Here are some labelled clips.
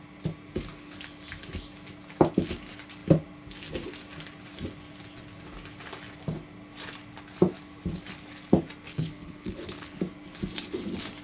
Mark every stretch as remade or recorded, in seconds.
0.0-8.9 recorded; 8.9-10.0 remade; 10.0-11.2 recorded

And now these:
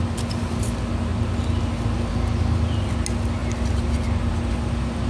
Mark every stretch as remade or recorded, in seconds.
0.0-5.1 recorded

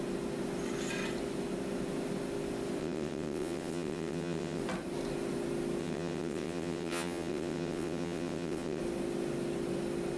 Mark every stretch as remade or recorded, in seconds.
0.0-2.8 recorded; 2.8-4.6 remade; 4.6-5.8 recorded; 5.8-8.8 remade; 8.8-10.2 recorded

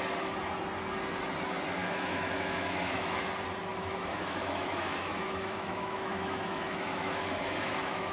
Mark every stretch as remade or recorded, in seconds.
0.0-1.8 recorded; 1.8-3.2 remade; 3.2-3.7 recorded; 3.7-8.1 remade

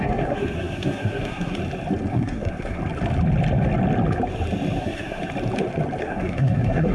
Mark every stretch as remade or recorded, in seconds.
0.0-1.6 remade; 1.6-2.1 recorded; 2.1-2.8 remade; 2.8-4.8 recorded; 4.8-5.2 remade; 5.2-6.0 recorded; 6.0-6.9 remade